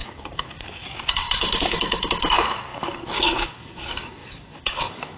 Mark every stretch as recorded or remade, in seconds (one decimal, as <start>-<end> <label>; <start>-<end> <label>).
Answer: 0.0-5.2 remade